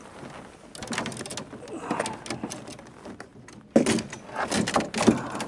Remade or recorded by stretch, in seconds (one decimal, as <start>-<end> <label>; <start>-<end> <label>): 0.0-5.5 recorded